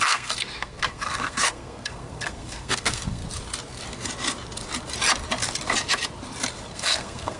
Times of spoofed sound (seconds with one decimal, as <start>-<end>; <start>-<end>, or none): 0.0-3.2; 6.7-7.4